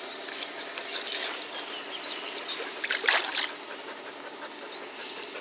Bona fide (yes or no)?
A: yes